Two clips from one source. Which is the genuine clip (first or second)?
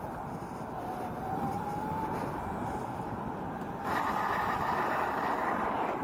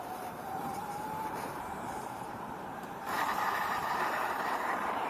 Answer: first